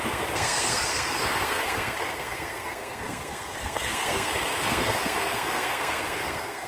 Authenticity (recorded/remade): remade